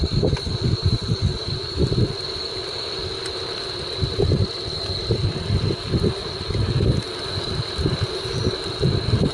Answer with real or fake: fake